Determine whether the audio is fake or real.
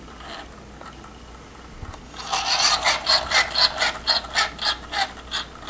real